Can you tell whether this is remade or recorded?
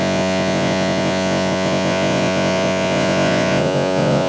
remade